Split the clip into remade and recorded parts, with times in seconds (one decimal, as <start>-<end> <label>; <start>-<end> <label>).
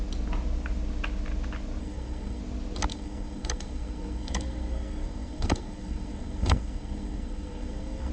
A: 0.0-1.8 recorded; 1.8-2.4 remade; 2.4-2.9 recorded; 2.9-8.1 remade